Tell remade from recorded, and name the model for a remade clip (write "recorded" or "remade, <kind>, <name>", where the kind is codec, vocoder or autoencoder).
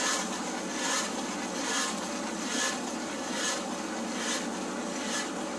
recorded